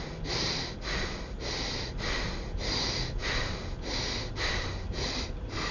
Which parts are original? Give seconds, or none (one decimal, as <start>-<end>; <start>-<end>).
0.0-5.7